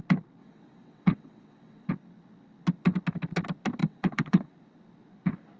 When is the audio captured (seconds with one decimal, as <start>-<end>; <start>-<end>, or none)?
0.0-0.4; 1.9-3.8; 4.5-5.6